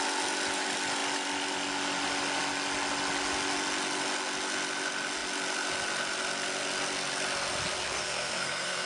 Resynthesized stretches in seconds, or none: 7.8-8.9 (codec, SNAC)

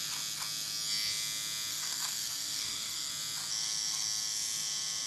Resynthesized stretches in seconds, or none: 1.7-3.1 (codec, SNAC)

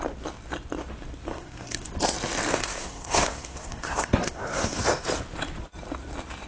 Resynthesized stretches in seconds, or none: 1.3-1.9 (codec, SNAC); 2.5-4.8